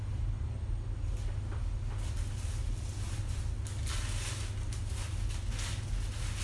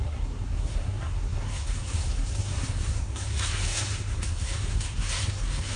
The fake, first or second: second